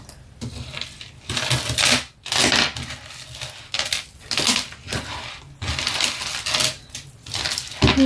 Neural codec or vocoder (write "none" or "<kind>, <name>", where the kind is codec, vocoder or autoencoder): none